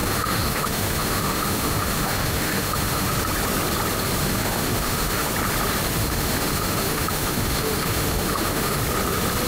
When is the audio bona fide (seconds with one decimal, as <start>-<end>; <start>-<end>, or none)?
3.1-4.2; 5.3-6.0; 8.8-9.5